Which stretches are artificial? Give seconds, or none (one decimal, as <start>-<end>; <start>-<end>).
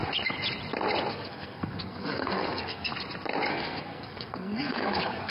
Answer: 1.1-2.9; 3.5-5.3